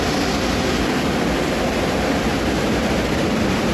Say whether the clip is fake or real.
real